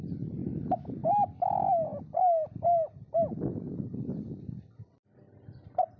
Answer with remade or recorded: recorded